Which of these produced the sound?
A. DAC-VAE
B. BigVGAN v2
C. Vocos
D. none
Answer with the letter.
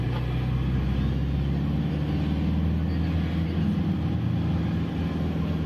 D